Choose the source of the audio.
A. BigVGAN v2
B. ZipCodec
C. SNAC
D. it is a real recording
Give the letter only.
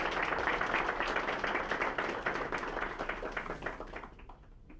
D